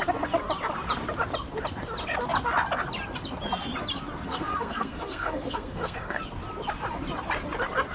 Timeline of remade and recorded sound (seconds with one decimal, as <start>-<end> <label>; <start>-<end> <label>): 0.0-4.3 recorded; 4.3-6.2 remade; 6.2-7.9 recorded